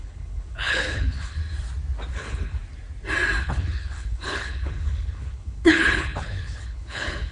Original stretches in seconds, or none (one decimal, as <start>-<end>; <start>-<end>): 1.4-2.1; 2.6-3.4